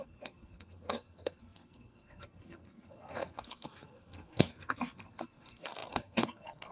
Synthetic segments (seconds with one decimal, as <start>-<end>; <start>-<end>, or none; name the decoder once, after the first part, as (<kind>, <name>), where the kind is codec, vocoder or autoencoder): 0.0-6.7 (codec, SNAC)